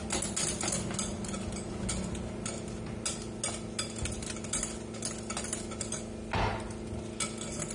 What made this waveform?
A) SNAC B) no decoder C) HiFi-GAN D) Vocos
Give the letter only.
B